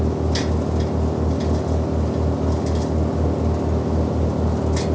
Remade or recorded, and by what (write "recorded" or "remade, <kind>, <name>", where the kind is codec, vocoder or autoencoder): recorded